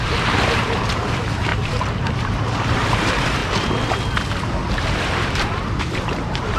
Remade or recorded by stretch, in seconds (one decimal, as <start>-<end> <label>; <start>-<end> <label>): 0.0-3.4 remade; 3.4-4.7 recorded; 4.7-6.6 remade